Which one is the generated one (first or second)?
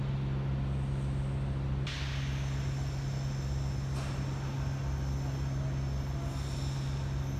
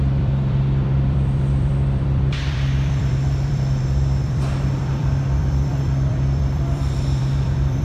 second